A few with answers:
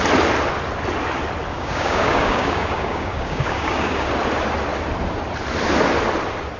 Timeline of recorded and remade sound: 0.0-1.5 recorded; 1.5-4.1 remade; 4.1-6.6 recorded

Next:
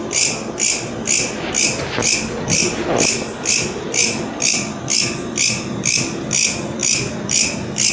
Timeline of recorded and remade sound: 0.0-7.9 recorded